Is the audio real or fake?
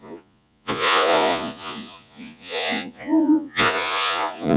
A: fake